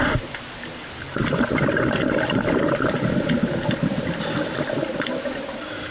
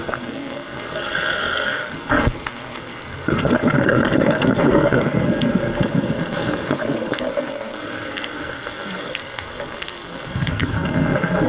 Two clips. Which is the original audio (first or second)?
first